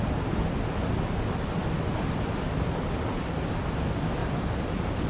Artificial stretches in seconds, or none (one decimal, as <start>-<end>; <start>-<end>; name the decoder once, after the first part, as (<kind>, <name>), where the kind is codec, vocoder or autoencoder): 4.2-5.1 (vocoder, BigVGAN v2)